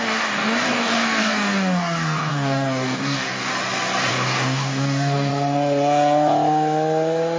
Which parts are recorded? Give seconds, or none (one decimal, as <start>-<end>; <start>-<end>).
3.5-4.1; 5.3-7.4

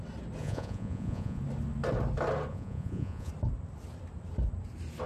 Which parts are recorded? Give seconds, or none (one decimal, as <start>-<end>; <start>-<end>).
0.0-0.4; 1.4-2.5; 3.3-5.1

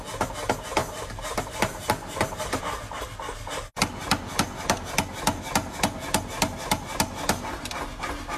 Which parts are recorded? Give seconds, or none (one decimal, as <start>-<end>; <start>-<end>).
0.0-0.8; 2.6-8.4

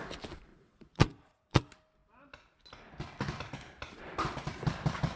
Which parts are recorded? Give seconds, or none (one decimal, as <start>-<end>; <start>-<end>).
0.0-0.5; 1.6-5.2

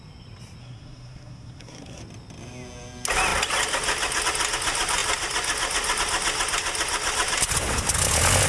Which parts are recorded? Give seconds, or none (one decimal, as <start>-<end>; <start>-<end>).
0.0-0.6; 2.0-8.5